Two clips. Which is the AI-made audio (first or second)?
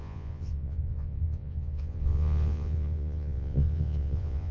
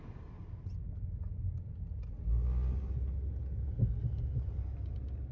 first